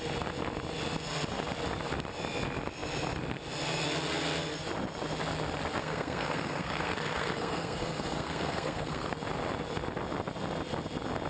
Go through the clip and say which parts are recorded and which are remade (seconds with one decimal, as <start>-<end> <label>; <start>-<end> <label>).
0.0-5.8 recorded; 5.8-9.1 remade; 9.1-11.3 recorded